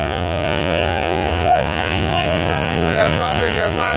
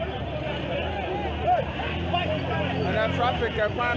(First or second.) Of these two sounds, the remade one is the first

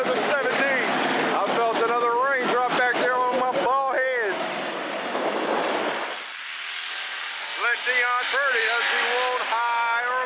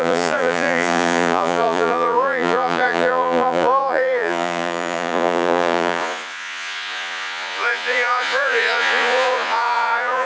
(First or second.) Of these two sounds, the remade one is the second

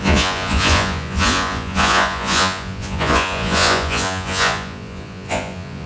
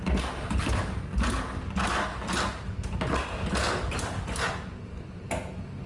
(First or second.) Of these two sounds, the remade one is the first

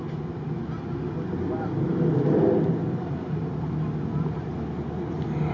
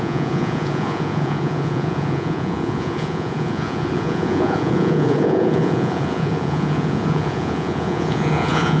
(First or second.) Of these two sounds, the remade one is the second